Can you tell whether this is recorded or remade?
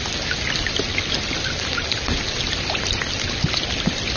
recorded